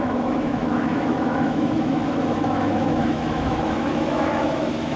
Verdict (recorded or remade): remade